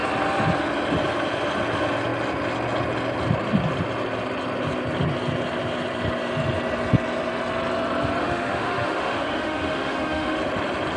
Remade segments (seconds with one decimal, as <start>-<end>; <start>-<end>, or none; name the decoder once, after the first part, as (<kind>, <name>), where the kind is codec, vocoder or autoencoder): 8.2-10.4 (autoencoder, DAC-VAE)

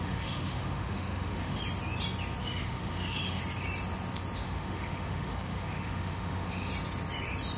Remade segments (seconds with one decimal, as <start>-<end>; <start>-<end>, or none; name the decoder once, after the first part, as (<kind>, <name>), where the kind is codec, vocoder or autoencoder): 0.0-1.6 (autoencoder, DAC-VAE); 2.4-3.4; 4.4-6.7

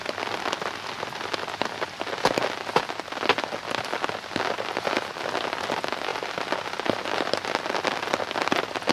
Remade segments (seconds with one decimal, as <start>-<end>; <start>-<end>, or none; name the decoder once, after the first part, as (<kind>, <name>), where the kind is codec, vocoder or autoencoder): none